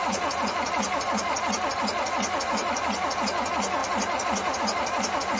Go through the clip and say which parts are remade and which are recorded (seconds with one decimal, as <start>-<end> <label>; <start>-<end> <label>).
0.0-3.2 remade; 3.2-3.8 recorded; 3.8-4.6 remade; 4.6-5.4 recorded